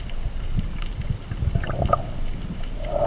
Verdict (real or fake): fake